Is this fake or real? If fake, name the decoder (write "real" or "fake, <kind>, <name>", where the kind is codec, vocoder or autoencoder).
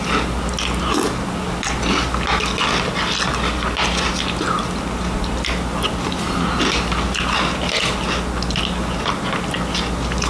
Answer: real